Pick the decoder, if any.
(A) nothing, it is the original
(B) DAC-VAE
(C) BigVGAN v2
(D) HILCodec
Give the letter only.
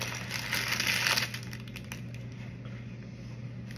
A